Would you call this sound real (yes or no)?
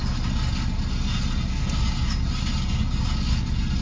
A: yes